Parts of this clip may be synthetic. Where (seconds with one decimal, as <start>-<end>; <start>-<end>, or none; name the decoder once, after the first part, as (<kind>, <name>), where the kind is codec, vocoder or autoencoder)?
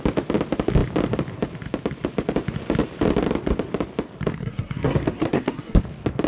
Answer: 4.3-5.8 (codec, SNAC)